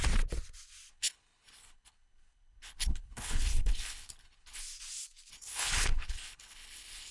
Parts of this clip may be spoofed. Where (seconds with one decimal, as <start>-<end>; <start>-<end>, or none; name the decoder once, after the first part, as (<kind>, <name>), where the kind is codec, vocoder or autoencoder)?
0.9-4.6 (codec, HILCodec); 5.3-7.1